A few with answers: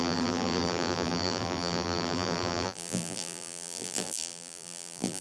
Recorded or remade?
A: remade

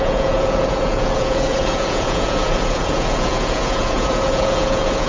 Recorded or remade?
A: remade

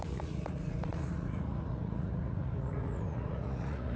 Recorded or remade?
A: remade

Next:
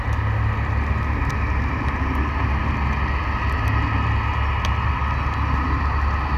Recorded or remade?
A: recorded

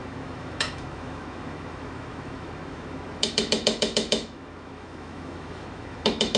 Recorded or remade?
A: remade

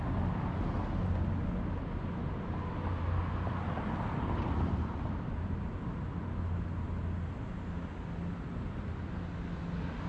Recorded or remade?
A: recorded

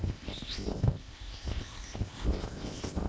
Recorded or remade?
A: remade